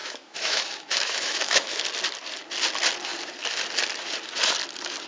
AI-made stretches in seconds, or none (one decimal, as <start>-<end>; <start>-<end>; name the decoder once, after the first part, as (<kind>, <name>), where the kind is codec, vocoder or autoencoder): 0.0-1.8 (autoencoder, DAC-VAE)